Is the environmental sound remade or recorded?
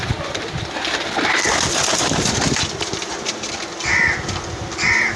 recorded